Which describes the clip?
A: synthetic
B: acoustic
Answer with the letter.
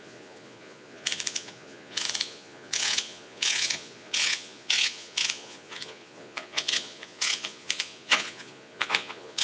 A